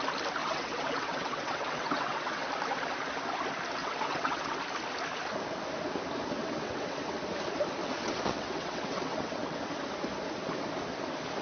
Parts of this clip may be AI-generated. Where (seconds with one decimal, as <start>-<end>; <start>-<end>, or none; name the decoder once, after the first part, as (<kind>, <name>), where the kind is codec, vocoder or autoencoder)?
0.4-2.5 (vocoder, WaveNeXt); 3.8-4.6; 6.4-7.2; 7.8-9.8